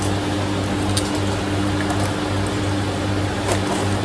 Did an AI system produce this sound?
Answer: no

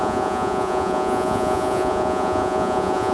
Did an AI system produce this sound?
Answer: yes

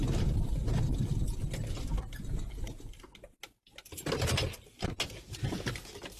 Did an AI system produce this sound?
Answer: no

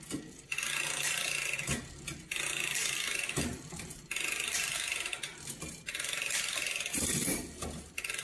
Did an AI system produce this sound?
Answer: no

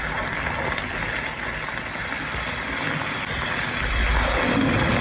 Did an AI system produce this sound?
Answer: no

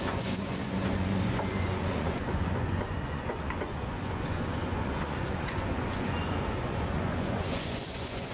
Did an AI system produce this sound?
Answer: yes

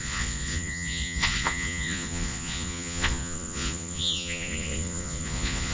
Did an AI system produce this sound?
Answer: yes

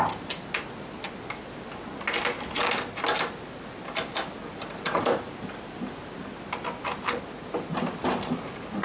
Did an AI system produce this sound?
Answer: no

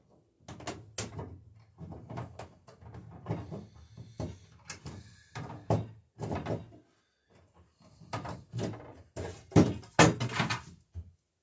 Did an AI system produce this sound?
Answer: no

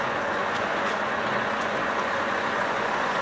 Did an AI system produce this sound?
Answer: yes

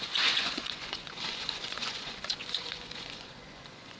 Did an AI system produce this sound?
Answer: yes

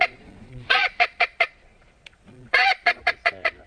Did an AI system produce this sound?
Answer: yes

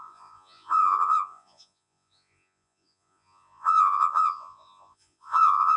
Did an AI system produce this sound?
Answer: yes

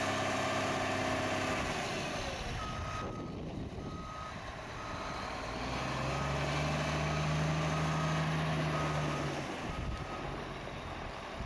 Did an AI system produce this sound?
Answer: no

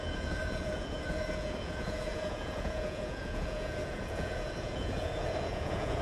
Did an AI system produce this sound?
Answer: yes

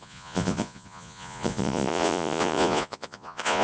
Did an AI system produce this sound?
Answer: yes